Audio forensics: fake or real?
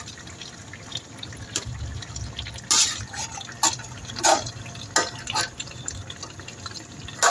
real